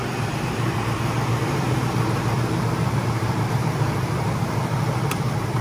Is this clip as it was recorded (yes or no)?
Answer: no